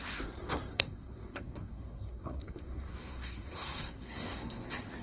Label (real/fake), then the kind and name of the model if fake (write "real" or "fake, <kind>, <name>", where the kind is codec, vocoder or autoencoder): fake, codec, SNAC